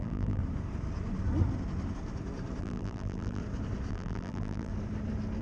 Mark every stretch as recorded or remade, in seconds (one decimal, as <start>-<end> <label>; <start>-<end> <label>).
0.0-0.4 remade; 0.4-2.6 recorded; 2.6-3.4 remade; 3.4-3.9 recorded; 3.9-4.7 remade; 4.7-5.4 recorded